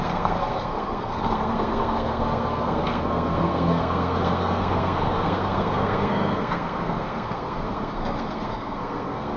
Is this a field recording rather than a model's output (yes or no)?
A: no